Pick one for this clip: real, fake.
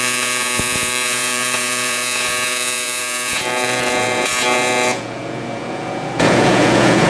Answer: fake